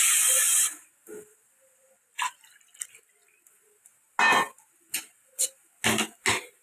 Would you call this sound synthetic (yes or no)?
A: no